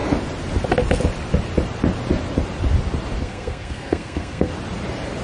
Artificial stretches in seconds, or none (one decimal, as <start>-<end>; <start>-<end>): 3.2-4.5